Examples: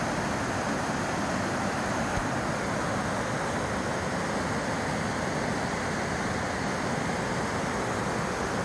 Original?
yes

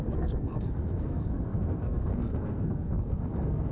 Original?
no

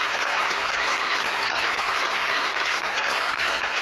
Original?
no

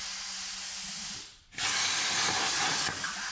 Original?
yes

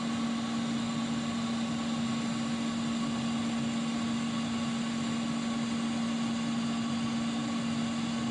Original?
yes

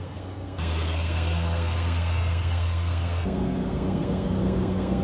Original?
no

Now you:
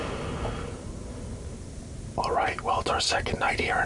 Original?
yes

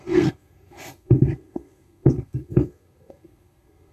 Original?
no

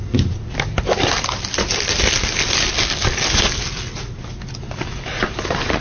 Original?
yes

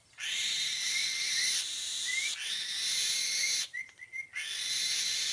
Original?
yes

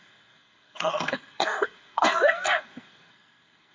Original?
no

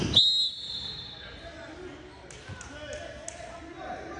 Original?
yes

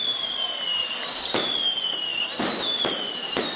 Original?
yes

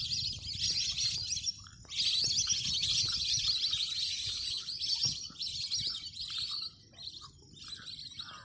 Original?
yes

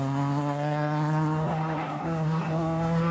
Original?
no